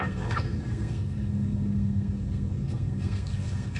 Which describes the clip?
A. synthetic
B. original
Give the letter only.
A